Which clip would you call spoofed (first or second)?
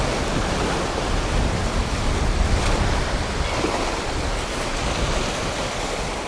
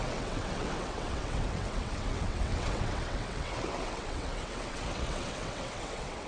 second